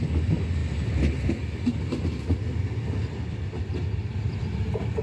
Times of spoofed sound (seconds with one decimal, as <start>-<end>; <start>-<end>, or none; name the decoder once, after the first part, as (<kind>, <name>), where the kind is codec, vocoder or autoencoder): none